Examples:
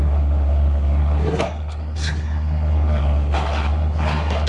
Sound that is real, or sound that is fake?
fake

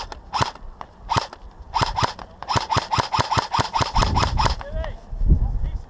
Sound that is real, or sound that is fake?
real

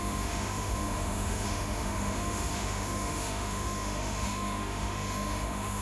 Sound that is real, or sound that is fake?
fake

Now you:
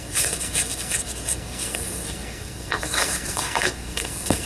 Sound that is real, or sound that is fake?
fake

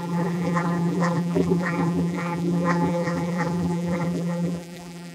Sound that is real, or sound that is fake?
fake